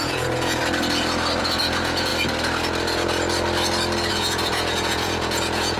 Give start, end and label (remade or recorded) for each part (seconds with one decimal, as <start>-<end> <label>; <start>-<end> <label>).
0.0-0.6 remade; 0.6-1.4 recorded; 1.4-2.1 remade; 2.1-4.1 recorded; 4.1-5.8 remade